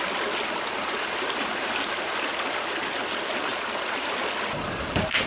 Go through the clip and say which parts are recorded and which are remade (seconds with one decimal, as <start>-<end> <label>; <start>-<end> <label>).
0.0-5.3 recorded